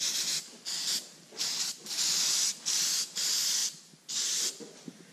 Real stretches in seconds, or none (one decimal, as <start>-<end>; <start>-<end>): 0.0-5.1